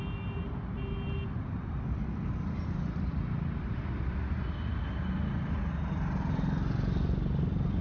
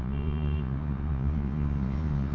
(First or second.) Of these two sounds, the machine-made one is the second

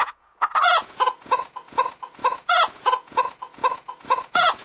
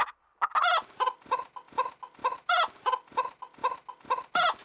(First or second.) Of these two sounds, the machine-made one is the first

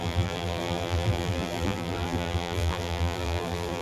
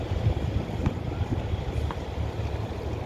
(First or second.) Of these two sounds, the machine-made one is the first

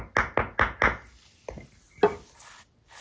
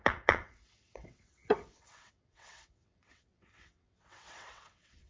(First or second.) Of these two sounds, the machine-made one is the second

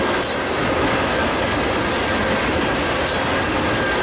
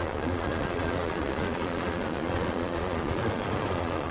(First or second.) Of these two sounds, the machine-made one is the second